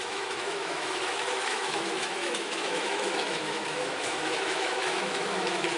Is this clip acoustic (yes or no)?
no